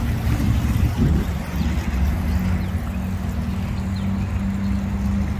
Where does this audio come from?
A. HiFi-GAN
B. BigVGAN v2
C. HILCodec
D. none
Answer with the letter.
D